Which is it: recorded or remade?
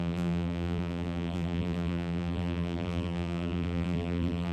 remade